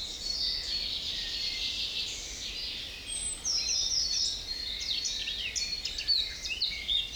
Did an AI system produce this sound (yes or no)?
no